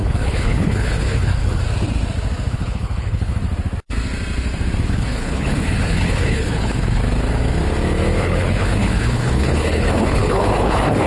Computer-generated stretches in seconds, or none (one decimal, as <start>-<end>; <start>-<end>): 0.0-1.6; 2.5-3.4; 4.8-7.0; 8.2-11.1